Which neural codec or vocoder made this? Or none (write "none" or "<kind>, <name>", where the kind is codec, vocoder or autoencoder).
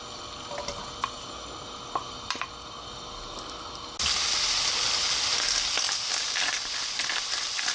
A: none